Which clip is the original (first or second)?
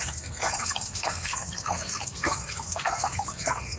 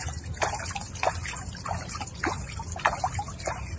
second